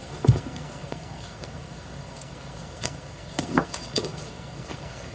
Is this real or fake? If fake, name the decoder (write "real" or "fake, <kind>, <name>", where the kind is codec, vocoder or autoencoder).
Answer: fake, codec, SNAC